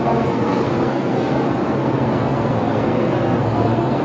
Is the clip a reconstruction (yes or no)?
yes